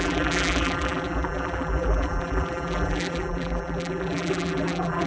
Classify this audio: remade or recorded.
remade